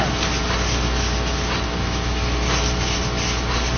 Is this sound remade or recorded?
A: recorded